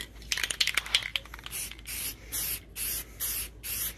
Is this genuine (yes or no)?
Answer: yes